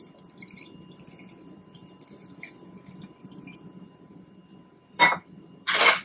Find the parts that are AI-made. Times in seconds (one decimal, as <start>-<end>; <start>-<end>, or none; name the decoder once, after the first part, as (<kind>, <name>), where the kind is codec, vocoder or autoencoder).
0.0-6.0 (vocoder, BigVGAN v2)